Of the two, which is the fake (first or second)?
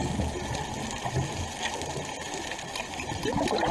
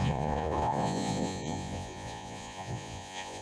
second